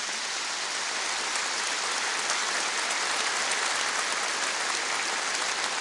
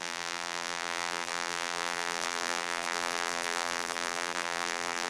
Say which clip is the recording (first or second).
first